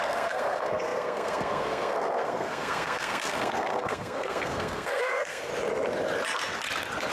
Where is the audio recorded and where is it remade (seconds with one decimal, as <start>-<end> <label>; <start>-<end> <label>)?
0.0-5.5 remade; 5.5-7.1 recorded